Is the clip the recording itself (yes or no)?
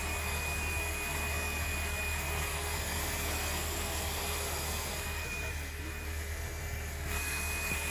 no